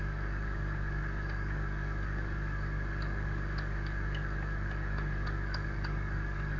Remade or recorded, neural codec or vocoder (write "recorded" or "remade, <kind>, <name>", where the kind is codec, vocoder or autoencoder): remade, codec, DAC